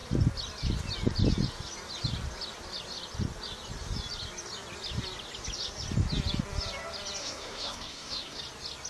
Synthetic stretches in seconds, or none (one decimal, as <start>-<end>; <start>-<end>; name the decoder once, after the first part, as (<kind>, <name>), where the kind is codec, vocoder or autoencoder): 7.2-8.4 (codec, SNAC)